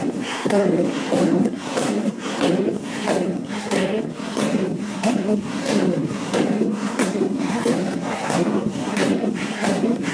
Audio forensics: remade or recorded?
remade